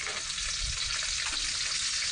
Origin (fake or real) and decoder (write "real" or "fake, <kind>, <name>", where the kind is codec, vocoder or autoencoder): real